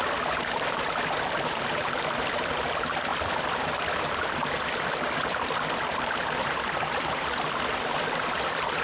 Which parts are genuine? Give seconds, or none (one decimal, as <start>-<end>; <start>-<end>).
3.1-4.2